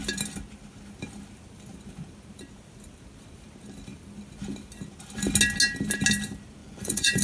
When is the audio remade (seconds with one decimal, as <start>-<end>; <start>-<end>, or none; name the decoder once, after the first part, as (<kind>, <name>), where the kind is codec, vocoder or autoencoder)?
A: 6.6-7.2 (vocoder, Vocos)